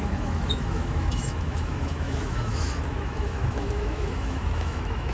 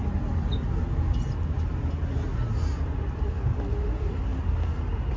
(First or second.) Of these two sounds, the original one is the second